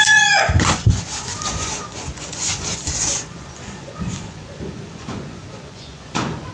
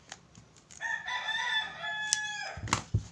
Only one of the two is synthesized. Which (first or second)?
first